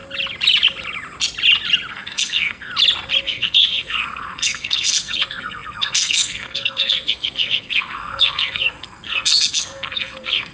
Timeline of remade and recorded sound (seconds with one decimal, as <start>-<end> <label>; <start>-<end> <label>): 0.0-1.9 recorded; 1.9-2.7 remade; 2.7-3.2 recorded; 3.2-10.5 remade